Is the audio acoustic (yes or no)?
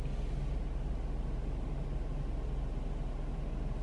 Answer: yes